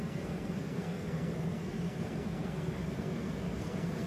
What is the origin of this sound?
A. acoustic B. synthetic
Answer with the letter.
B